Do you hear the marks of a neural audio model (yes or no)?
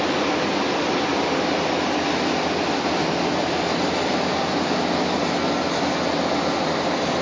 no